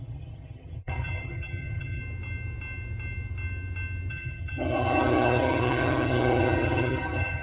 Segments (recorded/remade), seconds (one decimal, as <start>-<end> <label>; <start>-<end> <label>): 0.0-2.0 remade; 2.0-4.1 recorded; 4.1-7.4 remade